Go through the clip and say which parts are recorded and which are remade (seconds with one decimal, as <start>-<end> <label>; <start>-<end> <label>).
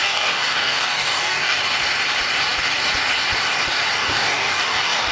0.0-1.6 remade; 1.6-4.0 recorded; 4.0-5.1 remade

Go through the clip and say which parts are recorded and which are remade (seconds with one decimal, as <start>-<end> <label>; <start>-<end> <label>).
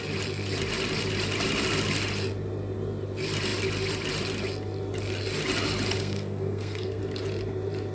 0.0-6.0 recorded; 6.0-7.0 remade; 7.0-7.9 recorded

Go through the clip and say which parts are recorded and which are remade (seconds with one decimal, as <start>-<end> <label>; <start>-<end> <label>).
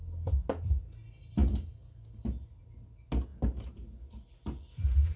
0.0-5.2 recorded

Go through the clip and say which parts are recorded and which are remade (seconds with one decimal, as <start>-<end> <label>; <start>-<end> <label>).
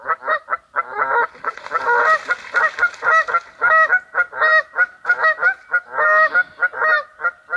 0.0-7.6 recorded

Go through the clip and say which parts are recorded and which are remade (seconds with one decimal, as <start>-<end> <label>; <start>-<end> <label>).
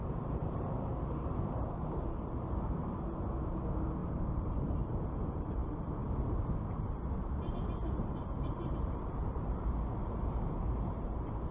0.0-2.9 remade; 2.9-4.0 recorded; 4.0-4.9 remade; 4.9-5.6 recorded; 5.6-9.5 remade; 9.5-11.5 recorded